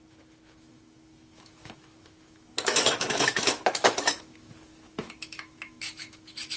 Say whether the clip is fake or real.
fake